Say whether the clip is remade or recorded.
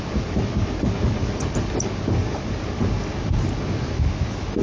recorded